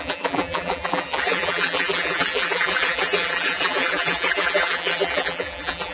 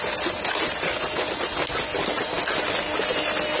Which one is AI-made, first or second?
first